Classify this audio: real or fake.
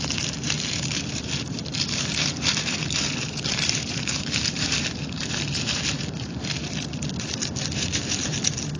fake